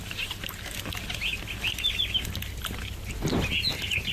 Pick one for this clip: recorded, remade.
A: recorded